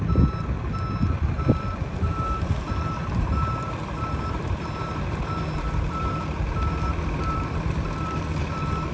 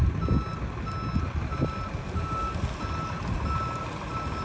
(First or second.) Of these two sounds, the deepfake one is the first